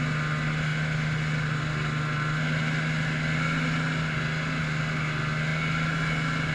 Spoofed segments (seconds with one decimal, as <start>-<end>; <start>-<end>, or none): none